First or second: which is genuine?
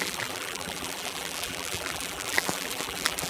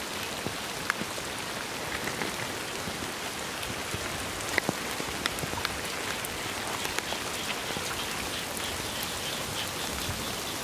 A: second